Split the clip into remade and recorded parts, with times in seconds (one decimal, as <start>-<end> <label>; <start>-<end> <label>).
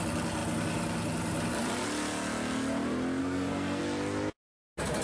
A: 0.0-3.2 recorded; 3.2-3.8 remade; 3.8-5.0 recorded